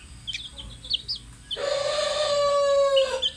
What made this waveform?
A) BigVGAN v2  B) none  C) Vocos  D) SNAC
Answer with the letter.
B